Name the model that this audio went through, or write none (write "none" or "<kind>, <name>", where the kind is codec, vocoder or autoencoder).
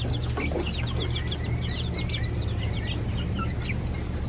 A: none